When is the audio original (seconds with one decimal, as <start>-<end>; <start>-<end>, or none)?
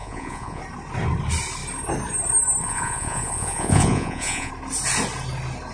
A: 0.6-2.6; 4.5-5.7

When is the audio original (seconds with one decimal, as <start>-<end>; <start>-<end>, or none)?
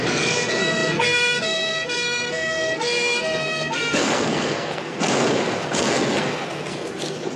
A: none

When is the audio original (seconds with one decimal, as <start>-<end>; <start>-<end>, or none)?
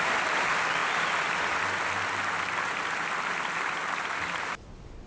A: 0.0-5.1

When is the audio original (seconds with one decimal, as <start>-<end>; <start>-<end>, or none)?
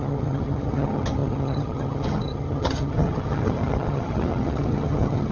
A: none